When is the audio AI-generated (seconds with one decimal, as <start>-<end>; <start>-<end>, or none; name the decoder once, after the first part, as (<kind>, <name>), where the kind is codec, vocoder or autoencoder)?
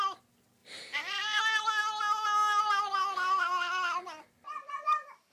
0.6-1.4 (vocoder, BigVGAN v2)